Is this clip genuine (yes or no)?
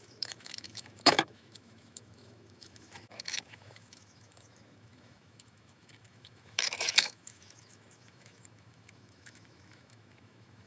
no